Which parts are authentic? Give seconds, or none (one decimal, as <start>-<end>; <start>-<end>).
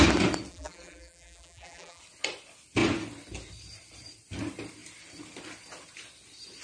0.0-0.5; 2.0-6.6